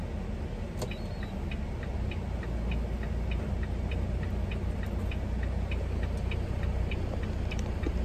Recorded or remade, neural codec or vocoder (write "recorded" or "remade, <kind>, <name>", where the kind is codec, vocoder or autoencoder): recorded